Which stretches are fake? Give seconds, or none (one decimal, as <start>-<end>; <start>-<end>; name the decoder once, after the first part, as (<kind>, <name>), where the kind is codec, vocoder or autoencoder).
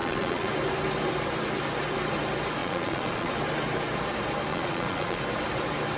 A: 0.0-0.5 (vocoder, Vocos); 2.6-3.3; 4.5-5.2